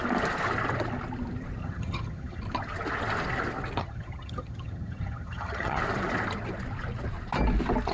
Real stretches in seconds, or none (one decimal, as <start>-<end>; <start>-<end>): 0.0-1.6; 2.4-3.8; 5.8-7.9